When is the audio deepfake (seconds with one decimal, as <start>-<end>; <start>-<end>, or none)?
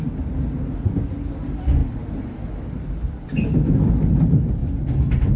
none